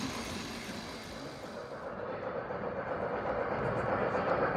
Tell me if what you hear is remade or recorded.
recorded